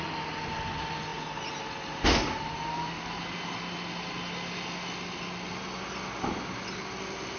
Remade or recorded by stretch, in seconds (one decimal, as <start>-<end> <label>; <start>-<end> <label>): 0.0-7.4 recorded